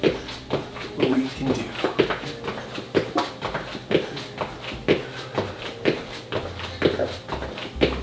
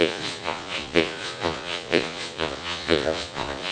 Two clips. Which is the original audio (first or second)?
first